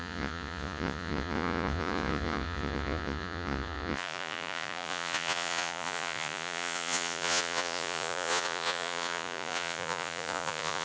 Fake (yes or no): yes